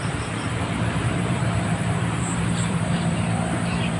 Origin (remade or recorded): remade